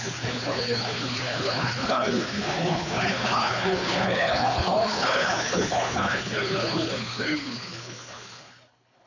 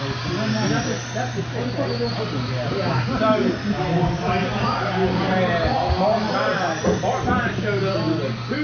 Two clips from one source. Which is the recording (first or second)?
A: second